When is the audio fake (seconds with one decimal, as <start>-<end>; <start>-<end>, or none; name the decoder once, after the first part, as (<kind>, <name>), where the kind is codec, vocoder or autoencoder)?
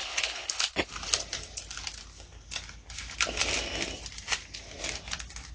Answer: 0.0-0.9 (codec, HILCodec)